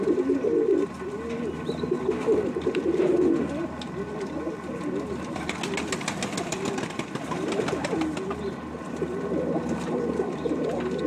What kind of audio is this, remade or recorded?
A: recorded